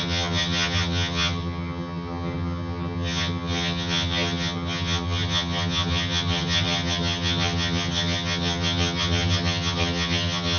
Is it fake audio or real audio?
fake